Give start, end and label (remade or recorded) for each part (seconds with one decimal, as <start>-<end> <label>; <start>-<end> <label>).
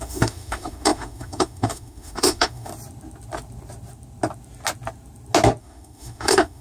0.0-2.7 remade; 2.7-5.6 recorded; 5.6-6.6 remade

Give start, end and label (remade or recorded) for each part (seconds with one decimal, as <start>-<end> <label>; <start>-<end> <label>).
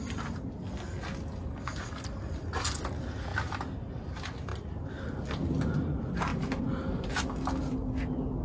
0.0-8.4 recorded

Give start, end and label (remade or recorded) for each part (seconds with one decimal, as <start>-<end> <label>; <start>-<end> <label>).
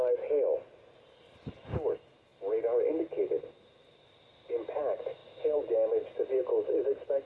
0.0-7.3 recorded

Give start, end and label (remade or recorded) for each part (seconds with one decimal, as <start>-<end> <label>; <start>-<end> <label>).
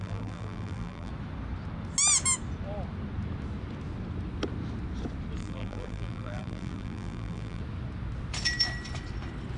0.0-1.1 remade; 1.1-5.4 recorded; 5.4-7.6 remade; 7.6-9.6 recorded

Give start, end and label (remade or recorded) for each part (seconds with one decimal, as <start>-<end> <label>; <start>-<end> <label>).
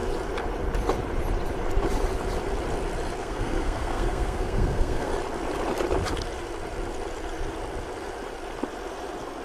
0.0-3.2 recorded; 3.2-5.1 remade; 5.1-9.4 recorded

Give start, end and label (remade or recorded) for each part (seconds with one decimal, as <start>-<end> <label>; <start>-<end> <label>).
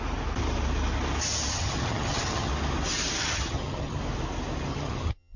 0.0-1.5 recorded; 1.5-2.5 remade; 2.5-3.2 recorded; 3.2-4.0 remade; 4.0-4.7 recorded; 4.7-5.4 remade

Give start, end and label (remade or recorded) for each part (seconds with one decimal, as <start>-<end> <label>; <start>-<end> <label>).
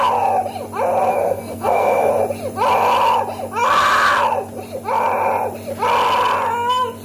0.0-1.1 recorded; 1.1-2.1 remade; 2.1-7.0 recorded